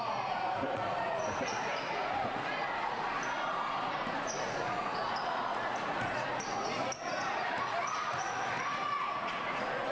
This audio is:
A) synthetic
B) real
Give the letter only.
A